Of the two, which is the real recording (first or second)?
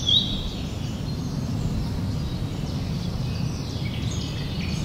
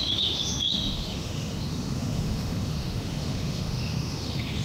first